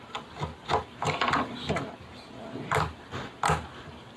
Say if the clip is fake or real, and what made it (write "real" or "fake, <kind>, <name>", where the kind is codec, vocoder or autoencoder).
real